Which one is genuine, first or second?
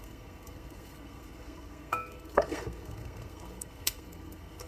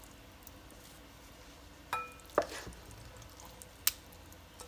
second